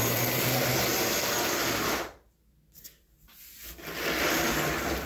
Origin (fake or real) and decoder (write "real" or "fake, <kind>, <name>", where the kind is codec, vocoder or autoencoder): real